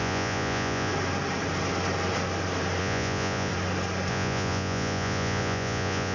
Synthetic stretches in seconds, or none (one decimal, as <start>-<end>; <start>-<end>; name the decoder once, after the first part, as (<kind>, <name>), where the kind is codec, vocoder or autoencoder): 0.0-0.9 (vocoder, Vocos); 2.8-3.5; 4.1-6.1